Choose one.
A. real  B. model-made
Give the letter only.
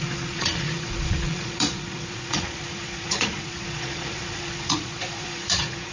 B